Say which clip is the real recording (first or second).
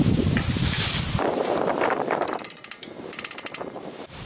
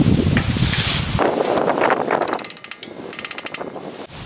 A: second